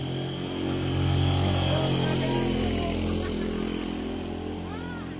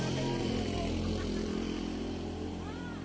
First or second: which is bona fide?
first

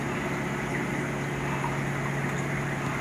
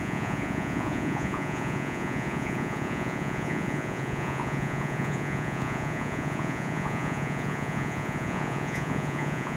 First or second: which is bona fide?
first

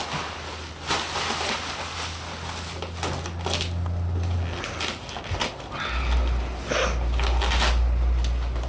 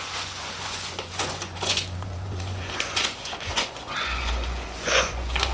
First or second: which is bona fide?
first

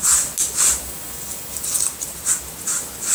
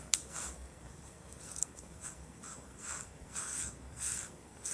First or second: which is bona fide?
first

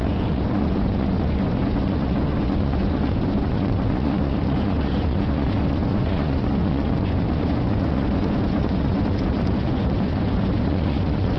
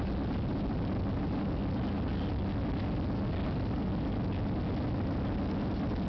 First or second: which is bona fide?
second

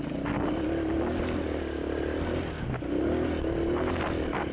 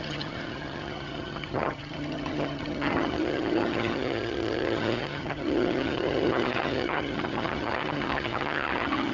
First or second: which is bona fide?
first